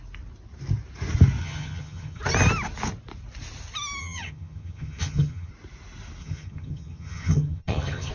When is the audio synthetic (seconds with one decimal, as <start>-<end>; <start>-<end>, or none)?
1.4-2.2; 4.0-5.5; 6.2-8.1